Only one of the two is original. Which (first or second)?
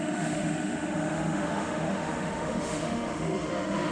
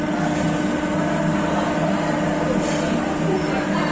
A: second